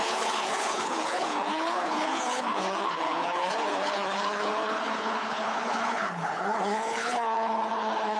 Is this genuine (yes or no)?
no